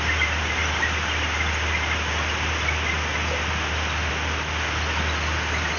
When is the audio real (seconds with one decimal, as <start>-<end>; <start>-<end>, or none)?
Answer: 0.0-5.8